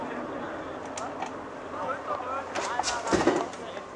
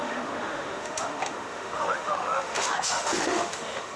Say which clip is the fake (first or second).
second